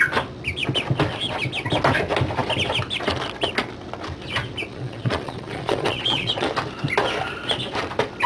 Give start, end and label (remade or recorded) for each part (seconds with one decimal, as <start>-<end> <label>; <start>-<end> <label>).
0.0-4.7 recorded; 4.7-6.5 remade; 6.5-8.3 recorded